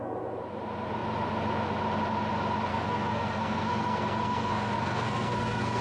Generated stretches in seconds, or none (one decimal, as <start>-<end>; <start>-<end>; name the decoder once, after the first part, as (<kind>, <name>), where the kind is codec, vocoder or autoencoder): 2.7-5.8 (codec, SNAC)